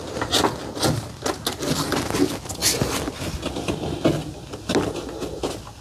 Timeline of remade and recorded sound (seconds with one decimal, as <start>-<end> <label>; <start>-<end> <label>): 0.0-5.8 recorded